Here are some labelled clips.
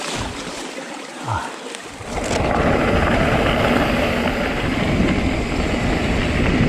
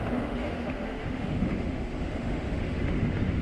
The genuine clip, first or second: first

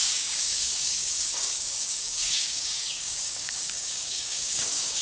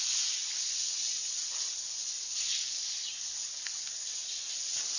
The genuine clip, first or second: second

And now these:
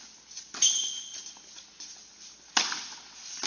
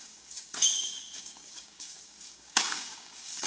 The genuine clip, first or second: first